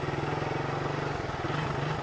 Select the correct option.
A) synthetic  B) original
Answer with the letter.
B